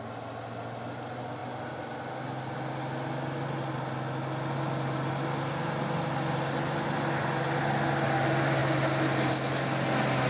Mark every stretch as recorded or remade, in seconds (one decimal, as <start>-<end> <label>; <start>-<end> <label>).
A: 0.0-10.3 recorded